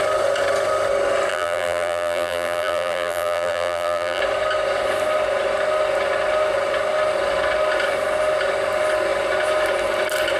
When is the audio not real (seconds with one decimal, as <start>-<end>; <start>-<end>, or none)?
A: 1.3-4.2